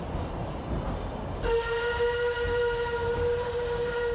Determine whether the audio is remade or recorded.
remade